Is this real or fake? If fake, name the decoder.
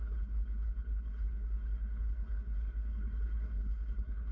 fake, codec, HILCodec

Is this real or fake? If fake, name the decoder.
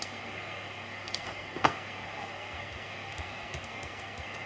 fake, codec, SNAC